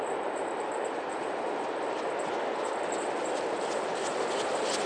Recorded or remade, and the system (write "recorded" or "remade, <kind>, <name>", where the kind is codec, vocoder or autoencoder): recorded